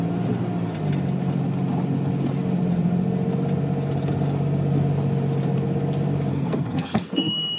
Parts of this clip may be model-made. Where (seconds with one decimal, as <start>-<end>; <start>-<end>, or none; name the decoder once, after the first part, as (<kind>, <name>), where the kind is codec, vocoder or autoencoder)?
6.3-7.6 (codec, SNAC)